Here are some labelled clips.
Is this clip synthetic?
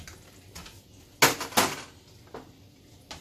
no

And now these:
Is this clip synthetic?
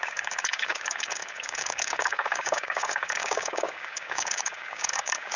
yes